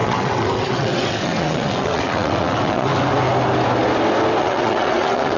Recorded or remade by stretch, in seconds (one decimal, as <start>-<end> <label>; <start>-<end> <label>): 0.0-2.9 remade; 2.9-4.4 recorded; 4.4-5.4 remade